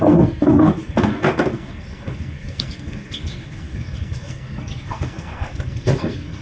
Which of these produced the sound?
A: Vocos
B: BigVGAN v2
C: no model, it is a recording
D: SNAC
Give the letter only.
D